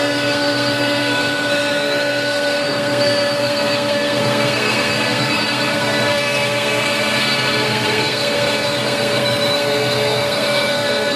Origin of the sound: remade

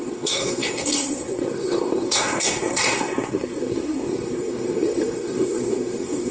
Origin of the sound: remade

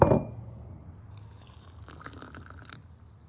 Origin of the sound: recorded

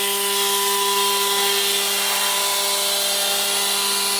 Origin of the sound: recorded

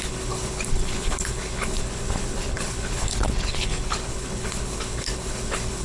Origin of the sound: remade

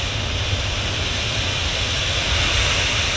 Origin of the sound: recorded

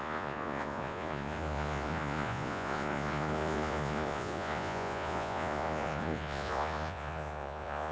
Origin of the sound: remade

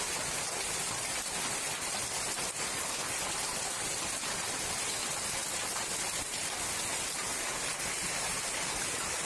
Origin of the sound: recorded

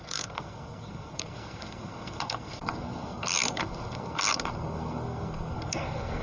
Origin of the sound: remade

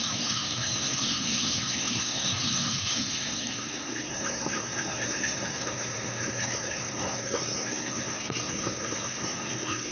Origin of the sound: remade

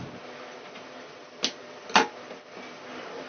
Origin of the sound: recorded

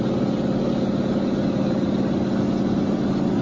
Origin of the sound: recorded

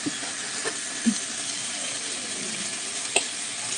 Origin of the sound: recorded